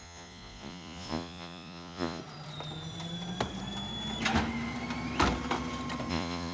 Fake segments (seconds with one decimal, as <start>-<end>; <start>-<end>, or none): 0.0-2.2; 6.1-6.5